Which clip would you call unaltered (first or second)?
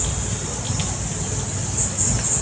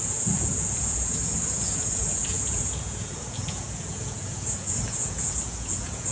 first